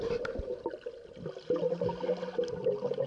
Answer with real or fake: real